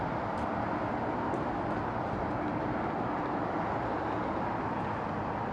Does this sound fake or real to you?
real